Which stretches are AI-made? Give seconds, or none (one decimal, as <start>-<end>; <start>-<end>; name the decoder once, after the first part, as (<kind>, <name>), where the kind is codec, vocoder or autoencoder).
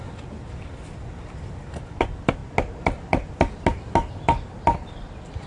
0.0-2.4 (vocoder, BigVGAN v2); 4.1-5.5